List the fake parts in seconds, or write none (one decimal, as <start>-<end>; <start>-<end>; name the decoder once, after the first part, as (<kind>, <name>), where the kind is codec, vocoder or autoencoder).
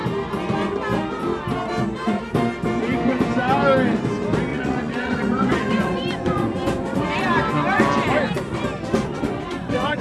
4.5-7.0 (vocoder, Vocos); 9.0-10.0